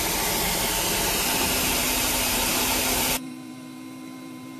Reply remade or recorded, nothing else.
remade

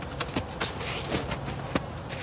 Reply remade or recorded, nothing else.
recorded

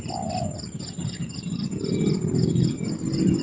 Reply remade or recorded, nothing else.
recorded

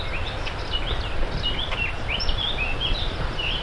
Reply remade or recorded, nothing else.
remade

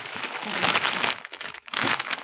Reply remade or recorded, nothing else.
remade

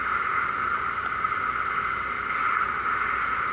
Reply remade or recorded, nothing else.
recorded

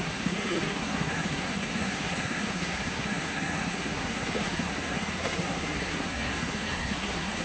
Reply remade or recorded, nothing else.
remade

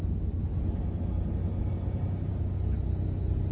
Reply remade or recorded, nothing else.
recorded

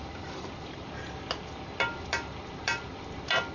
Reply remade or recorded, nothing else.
remade